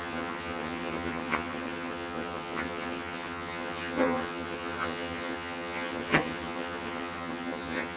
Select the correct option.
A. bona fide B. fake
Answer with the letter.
B